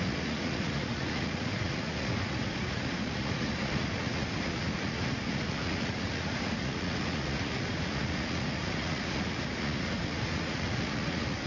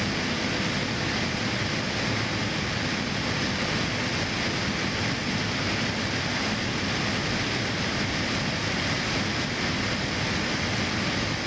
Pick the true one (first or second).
second